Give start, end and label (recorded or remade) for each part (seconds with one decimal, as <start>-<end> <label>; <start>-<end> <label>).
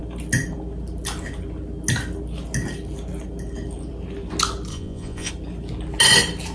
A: 0.0-4.7 recorded; 4.7-5.3 remade; 5.3-6.5 recorded